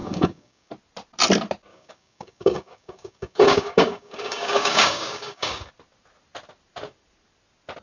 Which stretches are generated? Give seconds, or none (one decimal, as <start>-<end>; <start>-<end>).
0.0-0.7; 1.7-5.7